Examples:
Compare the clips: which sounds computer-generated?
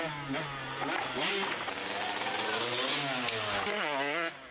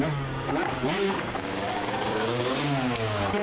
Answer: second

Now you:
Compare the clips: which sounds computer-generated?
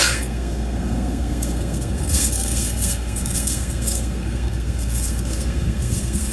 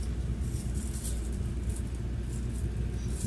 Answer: first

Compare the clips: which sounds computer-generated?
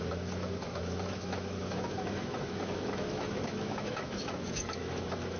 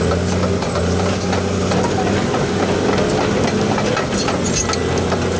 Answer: first